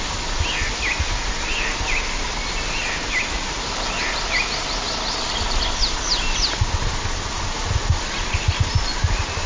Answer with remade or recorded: recorded